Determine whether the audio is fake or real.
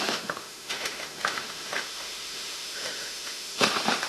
fake